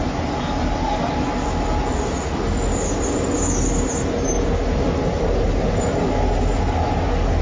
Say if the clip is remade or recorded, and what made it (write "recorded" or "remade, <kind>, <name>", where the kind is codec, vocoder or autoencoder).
recorded